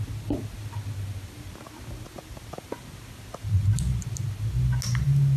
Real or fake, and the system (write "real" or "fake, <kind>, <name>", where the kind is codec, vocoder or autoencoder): real